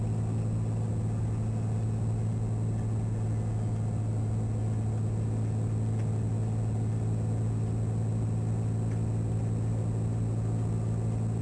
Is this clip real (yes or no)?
yes